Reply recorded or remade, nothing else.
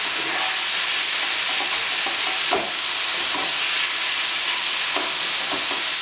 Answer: recorded